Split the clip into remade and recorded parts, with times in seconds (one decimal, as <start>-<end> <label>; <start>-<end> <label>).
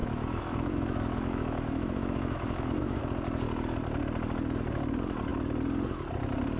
0.0-3.0 remade; 3.0-6.6 recorded